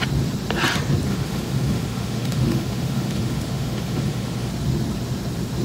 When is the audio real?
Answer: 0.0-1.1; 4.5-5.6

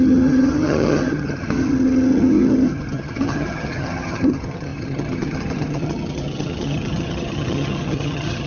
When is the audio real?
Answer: none

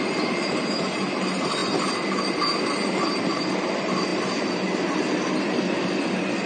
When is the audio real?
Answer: 0.0-6.5

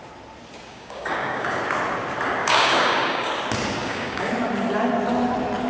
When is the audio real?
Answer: 0.0-0.7; 1.6-2.4; 3.3-3.8; 4.3-5.7

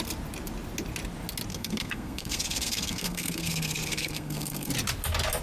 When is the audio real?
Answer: 0.0-1.5; 4.7-5.4

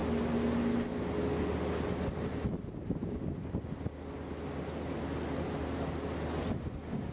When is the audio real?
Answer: 0.0-7.1

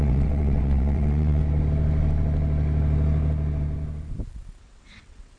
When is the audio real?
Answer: 1.4-4.6